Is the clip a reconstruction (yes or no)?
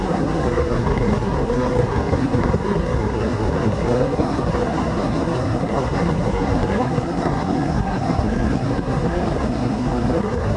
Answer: yes